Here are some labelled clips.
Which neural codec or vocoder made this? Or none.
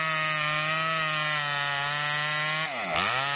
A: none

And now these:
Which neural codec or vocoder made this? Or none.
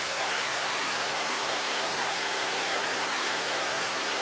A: codec, SNAC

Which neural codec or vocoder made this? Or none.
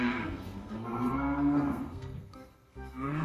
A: codec, SNAC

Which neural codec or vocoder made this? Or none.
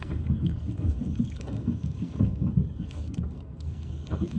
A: codec, SNAC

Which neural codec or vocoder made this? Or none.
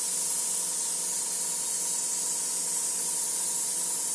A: none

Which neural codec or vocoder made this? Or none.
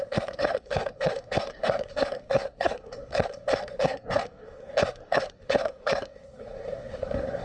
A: codec, SNAC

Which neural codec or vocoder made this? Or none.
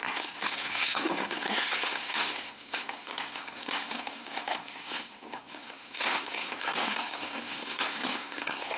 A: codec, SNAC